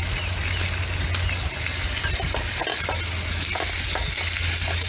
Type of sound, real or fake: real